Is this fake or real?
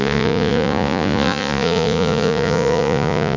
fake